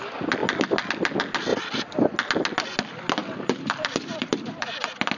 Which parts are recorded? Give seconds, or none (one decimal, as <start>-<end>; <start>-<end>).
0.0-3.2